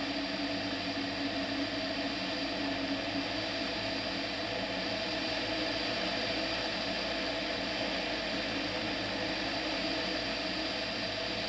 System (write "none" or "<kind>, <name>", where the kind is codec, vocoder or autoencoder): none